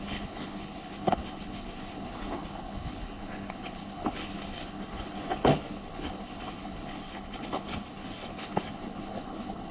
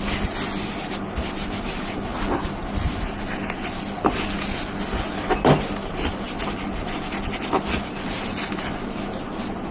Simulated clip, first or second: first